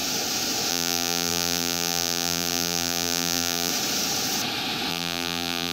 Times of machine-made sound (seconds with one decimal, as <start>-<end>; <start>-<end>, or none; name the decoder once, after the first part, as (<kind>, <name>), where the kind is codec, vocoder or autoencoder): 0.7-3.7 (vocoder, BigVGAN v2); 4.9-5.7